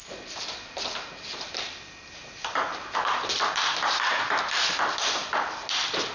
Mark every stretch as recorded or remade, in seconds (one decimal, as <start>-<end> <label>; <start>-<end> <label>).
0.0-6.1 recorded